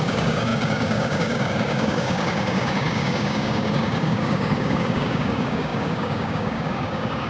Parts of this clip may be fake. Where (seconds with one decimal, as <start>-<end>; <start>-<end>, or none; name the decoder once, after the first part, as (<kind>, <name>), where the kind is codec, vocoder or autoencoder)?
0.0-7.3 (codec, DAC)